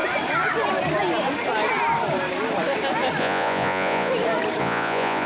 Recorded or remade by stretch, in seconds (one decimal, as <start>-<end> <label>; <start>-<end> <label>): 0.0-3.2 recorded; 3.2-4.1 remade; 4.1-4.6 recorded; 4.6-5.3 remade